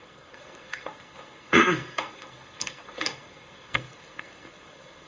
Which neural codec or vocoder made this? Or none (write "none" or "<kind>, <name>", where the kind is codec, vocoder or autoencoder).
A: codec, SNAC